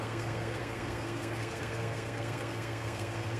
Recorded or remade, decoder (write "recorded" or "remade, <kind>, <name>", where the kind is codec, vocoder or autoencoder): remade, codec, SNAC